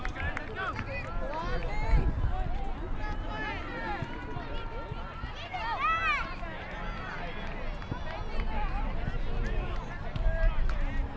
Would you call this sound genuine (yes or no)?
yes